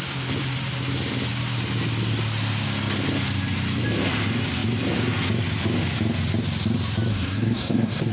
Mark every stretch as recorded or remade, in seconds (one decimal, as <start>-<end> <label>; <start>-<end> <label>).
0.0-7.1 recorded; 7.1-8.1 remade